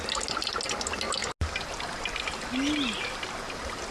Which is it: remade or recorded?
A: recorded